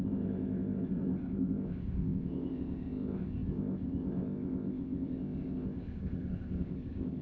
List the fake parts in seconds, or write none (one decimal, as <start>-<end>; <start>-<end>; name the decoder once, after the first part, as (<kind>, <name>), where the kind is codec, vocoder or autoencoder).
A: 0.0-7.2 (codec, ZipCodec)